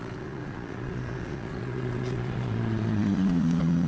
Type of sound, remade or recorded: remade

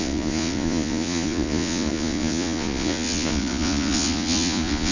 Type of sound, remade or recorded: remade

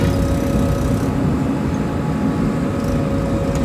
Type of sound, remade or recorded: recorded